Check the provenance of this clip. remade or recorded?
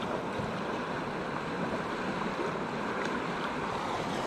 recorded